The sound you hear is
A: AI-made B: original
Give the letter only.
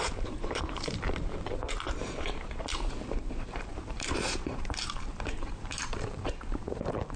A